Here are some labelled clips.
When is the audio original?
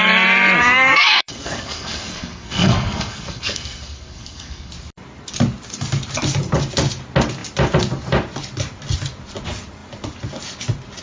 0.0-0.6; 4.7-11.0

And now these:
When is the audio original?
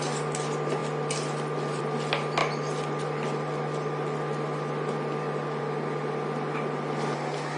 0.0-7.6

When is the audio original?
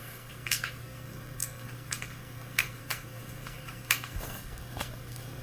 none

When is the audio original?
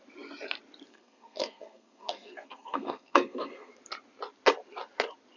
0.0-0.9; 3.7-5.4